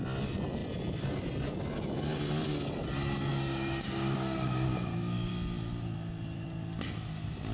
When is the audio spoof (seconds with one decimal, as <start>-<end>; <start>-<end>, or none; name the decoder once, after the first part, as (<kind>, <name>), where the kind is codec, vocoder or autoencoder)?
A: 3.3-5.3 (codec, DAC)